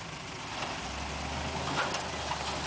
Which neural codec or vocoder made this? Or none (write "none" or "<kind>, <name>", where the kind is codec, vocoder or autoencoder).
none